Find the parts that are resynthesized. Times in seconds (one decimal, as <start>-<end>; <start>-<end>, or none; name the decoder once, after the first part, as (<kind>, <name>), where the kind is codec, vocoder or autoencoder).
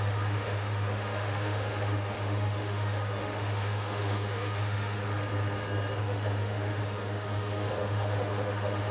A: 0.0-5.0 (autoencoder, DAC-VAE); 6.0-8.9